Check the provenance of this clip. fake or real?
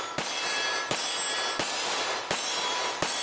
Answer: real